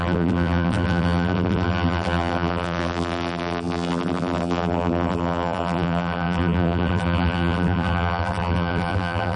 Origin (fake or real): fake